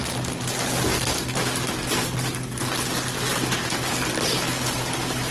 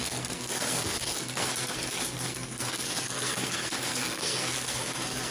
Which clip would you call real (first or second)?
first